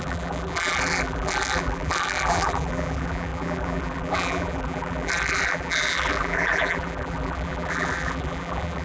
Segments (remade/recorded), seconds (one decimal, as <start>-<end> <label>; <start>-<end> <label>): 0.0-8.8 remade